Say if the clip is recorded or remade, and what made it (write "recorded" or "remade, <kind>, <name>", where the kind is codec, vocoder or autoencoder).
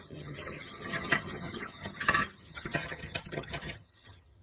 remade, vocoder, HiFi-GAN